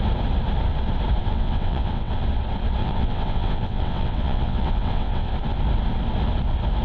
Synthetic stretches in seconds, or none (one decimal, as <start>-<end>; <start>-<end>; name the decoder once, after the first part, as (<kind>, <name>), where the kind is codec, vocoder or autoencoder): 1.2-2.1 (vocoder, WaveNeXt); 2.8-5.3